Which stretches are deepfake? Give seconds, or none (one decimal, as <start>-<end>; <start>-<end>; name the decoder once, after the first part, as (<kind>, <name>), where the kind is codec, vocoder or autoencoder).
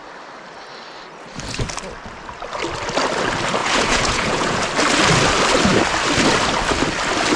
3.6-4.6 (vocoder, Vocos)